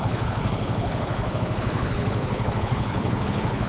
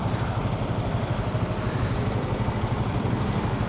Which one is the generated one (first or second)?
first